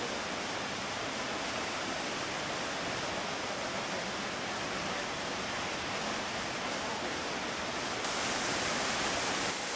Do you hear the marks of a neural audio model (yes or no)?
no